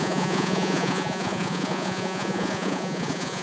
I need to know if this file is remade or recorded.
remade